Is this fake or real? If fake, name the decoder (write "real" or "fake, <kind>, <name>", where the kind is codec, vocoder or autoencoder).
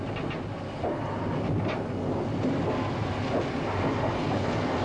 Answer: real